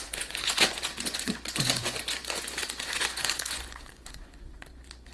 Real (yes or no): no